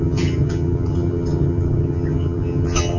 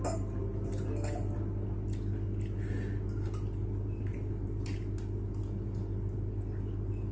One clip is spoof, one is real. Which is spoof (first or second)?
first